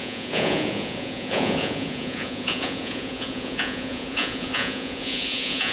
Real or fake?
fake